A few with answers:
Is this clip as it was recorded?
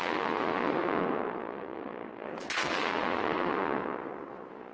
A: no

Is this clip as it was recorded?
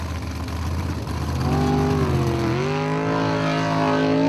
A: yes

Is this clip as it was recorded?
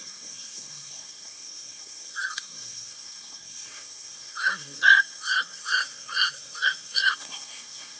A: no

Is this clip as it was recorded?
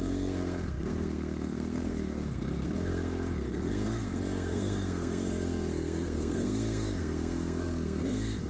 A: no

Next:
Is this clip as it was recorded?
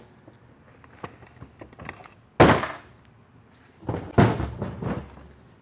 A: yes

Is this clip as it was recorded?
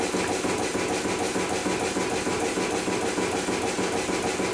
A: yes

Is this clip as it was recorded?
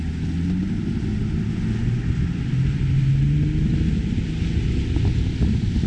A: yes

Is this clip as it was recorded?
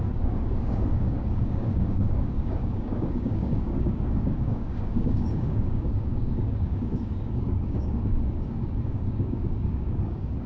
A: no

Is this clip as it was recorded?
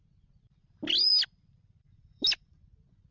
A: no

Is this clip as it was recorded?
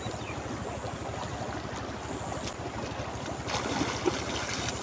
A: yes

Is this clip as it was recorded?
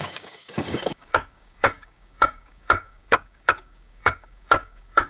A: no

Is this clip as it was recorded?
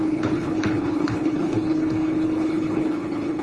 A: no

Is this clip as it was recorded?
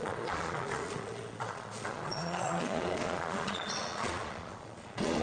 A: no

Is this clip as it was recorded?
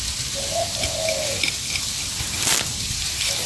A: yes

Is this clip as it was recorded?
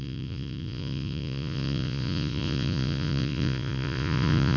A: no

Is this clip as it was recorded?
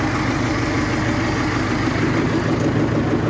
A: yes